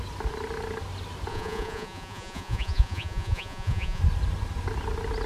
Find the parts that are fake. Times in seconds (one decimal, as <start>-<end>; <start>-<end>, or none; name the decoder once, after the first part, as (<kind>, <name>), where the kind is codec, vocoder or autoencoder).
1.3-4.0 (vocoder, Vocos)